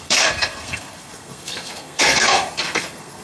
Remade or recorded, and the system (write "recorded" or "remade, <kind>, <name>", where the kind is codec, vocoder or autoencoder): remade, codec, SNAC